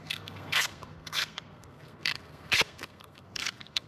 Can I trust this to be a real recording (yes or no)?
no